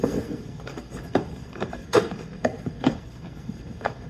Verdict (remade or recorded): remade